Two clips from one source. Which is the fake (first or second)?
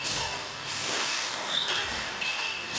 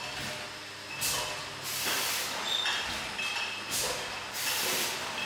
first